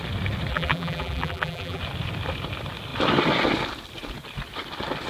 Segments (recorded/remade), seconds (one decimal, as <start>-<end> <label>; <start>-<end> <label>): 0.0-0.5 recorded; 0.5-1.8 remade; 1.8-5.1 recorded